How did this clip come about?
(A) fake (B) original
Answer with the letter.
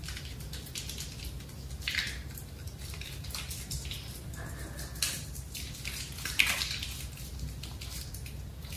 B